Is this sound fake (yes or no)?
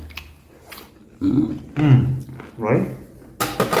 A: no